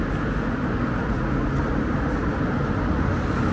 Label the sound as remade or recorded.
recorded